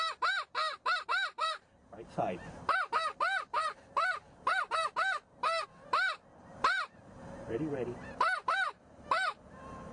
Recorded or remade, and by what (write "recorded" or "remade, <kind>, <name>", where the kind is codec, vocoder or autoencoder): remade, vocoder, BigVGAN v2